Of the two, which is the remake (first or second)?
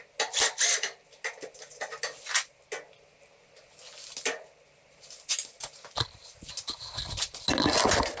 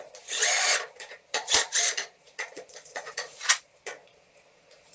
second